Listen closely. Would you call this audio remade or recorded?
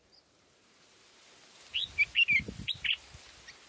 recorded